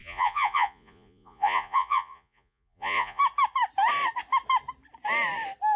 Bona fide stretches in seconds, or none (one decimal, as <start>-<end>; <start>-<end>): 3.2-5.8